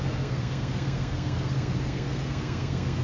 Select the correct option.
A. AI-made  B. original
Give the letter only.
A